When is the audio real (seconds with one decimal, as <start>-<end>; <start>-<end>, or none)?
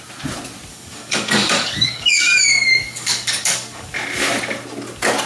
0.0-0.7; 3.9-5.3